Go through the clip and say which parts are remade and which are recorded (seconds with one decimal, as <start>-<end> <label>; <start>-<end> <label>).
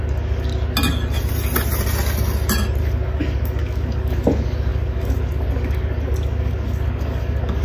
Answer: 0.0-0.5 remade; 0.5-2.8 recorded; 2.8-7.6 remade